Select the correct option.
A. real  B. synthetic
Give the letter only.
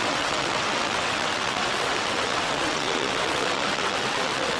B